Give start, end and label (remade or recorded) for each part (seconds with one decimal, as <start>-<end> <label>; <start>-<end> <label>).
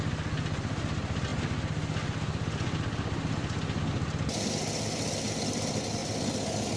0.0-6.8 recorded